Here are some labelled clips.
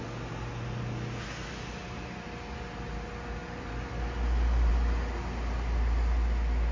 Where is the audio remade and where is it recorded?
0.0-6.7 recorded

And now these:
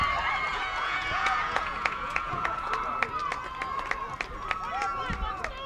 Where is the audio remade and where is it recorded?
0.0-0.5 recorded; 0.5-2.7 remade; 2.7-5.7 recorded

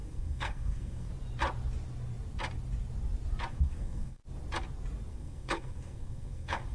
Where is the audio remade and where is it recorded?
0.0-1.1 remade; 1.1-3.5 recorded; 3.5-4.2 remade; 4.2-5.1 recorded; 5.1-6.7 remade

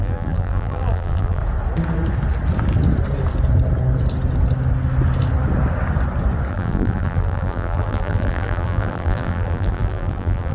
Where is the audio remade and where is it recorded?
0.0-1.4 remade; 1.4-6.5 recorded; 6.5-10.5 remade

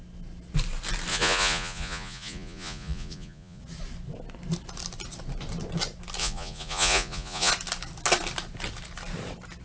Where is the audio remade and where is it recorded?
0.0-1.1 recorded; 1.1-3.6 remade; 3.6-6.2 recorded; 6.2-7.5 remade; 7.5-9.6 recorded